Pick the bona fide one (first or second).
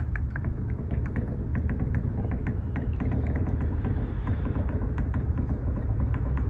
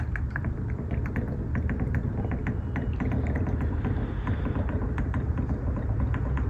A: second